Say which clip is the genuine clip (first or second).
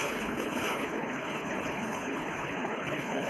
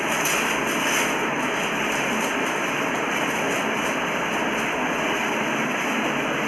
second